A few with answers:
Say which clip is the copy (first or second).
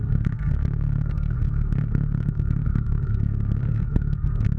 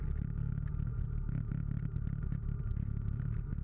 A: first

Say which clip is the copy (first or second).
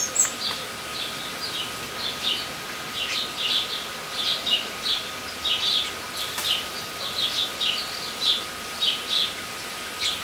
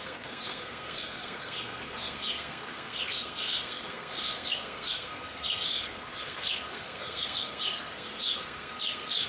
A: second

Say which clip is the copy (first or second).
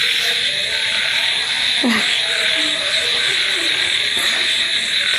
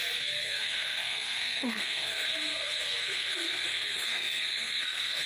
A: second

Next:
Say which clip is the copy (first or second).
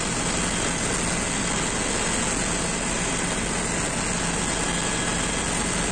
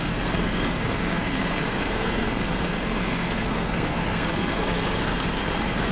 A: second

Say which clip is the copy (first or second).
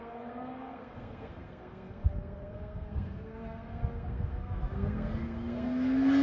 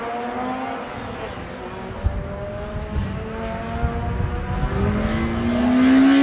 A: first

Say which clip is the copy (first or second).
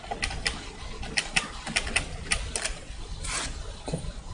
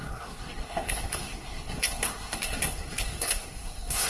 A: second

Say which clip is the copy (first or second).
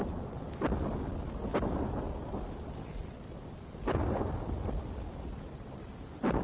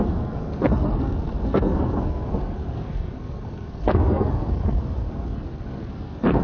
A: second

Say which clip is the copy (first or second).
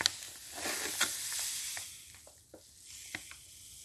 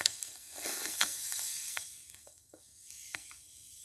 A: second